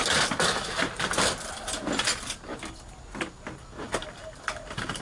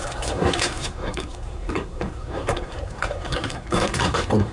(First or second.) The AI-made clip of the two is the second